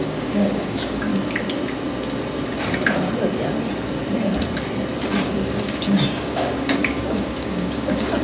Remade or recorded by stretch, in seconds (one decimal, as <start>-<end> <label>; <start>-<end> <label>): 0.0-1.1 remade; 1.1-5.2 recorded; 5.2-8.2 remade